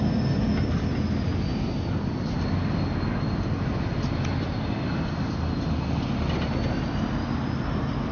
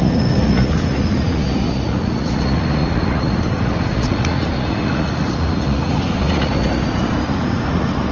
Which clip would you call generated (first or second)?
second